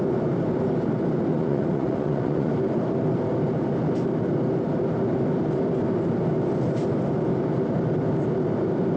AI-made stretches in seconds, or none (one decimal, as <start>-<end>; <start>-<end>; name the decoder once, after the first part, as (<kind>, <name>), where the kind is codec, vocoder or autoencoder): 1.3-2.5 (vocoder, Vocos)